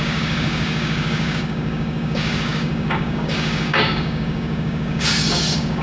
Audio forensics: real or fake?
fake